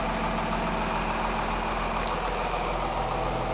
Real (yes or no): yes